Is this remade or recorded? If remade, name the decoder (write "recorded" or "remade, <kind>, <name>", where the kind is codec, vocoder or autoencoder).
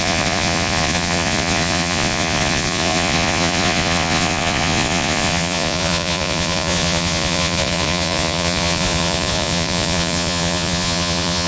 remade, vocoder, Vocos